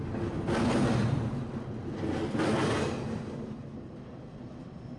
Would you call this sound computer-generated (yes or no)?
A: no